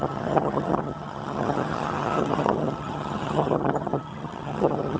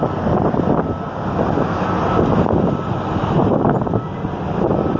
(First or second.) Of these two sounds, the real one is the second